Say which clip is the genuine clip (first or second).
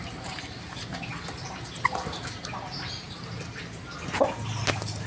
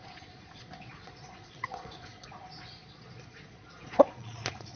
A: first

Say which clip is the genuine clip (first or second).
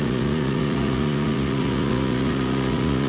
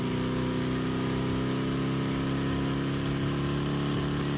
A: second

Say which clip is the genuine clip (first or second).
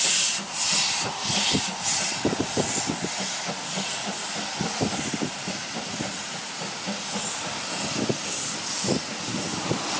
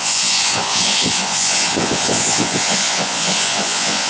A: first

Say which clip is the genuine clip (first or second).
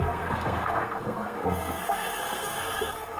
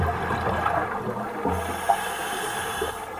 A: second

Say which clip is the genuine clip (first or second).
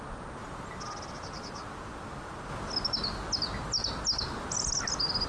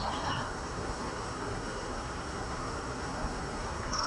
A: first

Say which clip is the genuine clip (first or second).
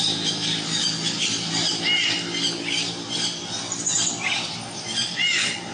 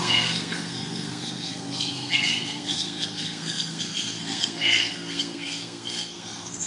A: first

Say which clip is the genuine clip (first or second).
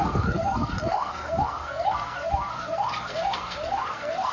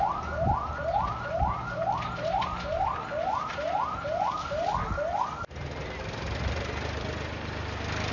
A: second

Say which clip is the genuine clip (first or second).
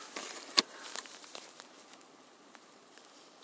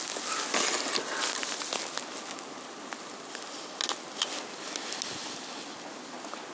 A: second